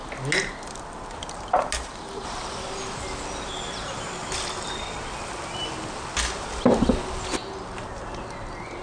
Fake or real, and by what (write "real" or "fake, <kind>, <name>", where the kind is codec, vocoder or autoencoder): real